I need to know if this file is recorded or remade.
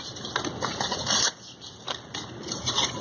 remade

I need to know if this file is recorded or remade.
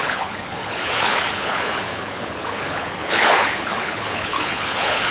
remade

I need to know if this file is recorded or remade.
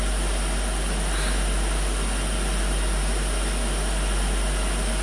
recorded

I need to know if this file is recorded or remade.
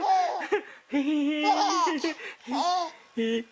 recorded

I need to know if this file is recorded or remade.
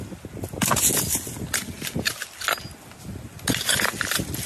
recorded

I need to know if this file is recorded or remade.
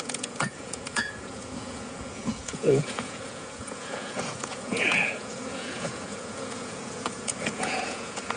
remade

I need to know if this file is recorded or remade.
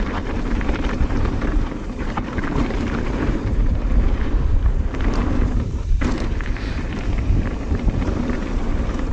remade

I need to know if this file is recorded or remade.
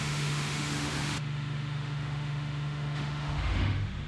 remade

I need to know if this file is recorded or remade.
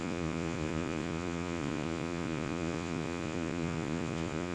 remade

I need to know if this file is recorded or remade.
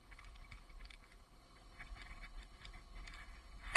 remade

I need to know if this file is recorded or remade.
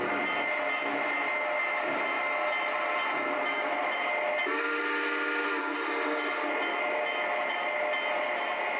recorded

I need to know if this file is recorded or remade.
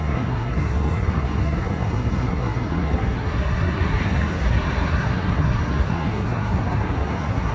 remade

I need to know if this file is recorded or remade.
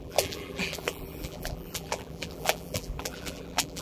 remade